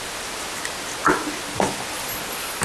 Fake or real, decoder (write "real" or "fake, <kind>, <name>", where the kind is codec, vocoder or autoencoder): real